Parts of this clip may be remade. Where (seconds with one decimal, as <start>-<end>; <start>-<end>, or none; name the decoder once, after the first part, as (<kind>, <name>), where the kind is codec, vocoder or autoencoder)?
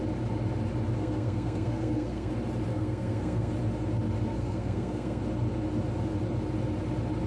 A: 1.0-2.3 (codec, SNAC); 2.7-3.5; 4.3-5.2